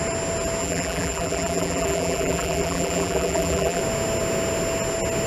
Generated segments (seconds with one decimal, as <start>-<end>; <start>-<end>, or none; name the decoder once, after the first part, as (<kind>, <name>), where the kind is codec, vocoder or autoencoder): 0.6-3.8 (vocoder, BigVGAN v2)